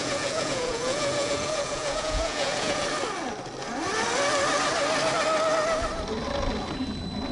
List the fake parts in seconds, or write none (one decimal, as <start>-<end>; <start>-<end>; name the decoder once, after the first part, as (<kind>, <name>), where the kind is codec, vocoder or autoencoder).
0.0-2.8 (vocoder, Vocos)